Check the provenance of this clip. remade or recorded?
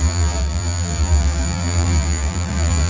remade